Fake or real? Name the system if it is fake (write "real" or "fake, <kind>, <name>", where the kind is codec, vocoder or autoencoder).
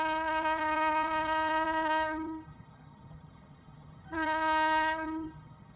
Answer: fake, vocoder, HiFi-GAN